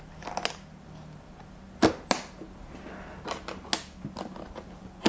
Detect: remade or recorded recorded